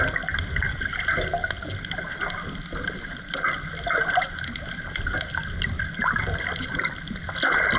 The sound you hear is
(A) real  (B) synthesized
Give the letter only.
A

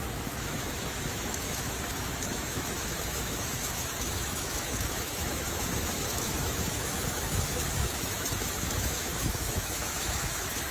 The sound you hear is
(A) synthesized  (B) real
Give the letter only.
A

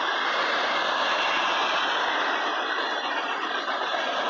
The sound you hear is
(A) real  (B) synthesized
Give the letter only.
A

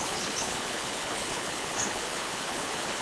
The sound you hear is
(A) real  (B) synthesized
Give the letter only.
B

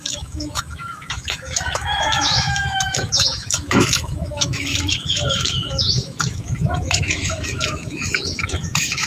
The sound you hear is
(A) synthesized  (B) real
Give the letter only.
A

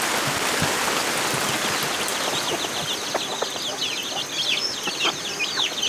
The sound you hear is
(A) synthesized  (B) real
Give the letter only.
B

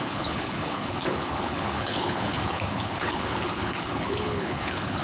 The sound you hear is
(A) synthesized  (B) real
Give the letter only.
A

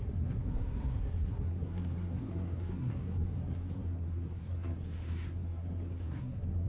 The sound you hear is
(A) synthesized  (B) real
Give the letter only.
A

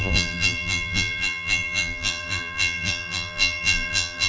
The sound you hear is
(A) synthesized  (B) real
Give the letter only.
A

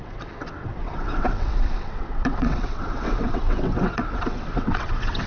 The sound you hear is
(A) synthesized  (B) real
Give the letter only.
A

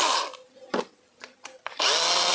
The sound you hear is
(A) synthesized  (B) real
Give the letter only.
B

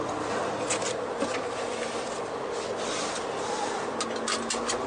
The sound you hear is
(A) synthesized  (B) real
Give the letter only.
B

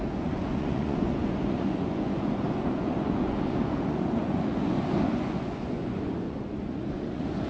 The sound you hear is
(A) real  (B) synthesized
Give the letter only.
B